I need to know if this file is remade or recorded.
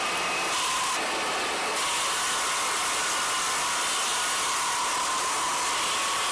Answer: recorded